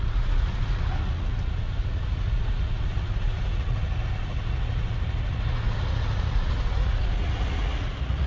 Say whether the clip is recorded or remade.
remade